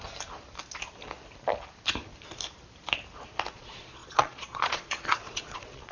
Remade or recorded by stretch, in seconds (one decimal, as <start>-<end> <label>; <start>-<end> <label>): 0.0-3.5 recorded; 3.5-5.9 remade